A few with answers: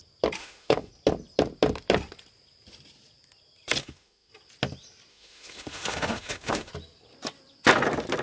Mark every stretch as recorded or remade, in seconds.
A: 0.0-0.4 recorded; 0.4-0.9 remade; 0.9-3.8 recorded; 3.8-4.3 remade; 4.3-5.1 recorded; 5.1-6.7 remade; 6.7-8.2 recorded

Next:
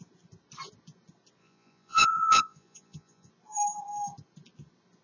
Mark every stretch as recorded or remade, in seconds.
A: 0.0-1.4 recorded; 1.4-3.3 remade; 3.3-5.0 recorded

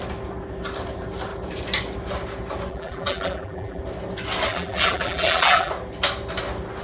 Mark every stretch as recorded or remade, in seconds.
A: 0.0-2.7 recorded; 2.7-3.8 remade; 3.8-4.5 recorded; 4.5-5.7 remade; 5.7-6.8 recorded

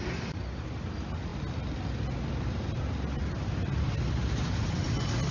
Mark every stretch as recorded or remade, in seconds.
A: 0.0-5.3 recorded